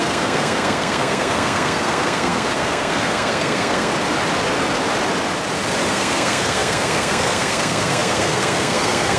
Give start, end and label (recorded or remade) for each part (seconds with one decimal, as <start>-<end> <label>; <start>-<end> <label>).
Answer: 0.0-3.9 remade; 3.9-5.9 recorded; 5.9-9.2 remade